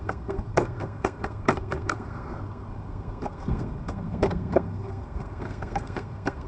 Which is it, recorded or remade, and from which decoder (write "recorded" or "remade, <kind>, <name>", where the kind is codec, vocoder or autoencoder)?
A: remade, codec, SNAC